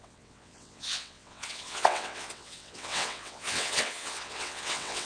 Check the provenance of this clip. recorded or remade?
remade